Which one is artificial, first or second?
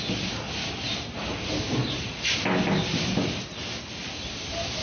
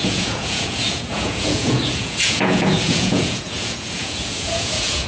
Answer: second